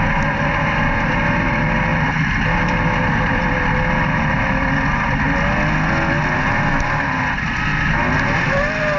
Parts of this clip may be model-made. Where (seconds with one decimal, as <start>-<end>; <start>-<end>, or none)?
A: none